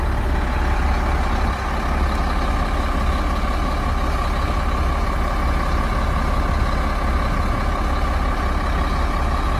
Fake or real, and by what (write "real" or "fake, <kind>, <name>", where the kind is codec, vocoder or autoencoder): real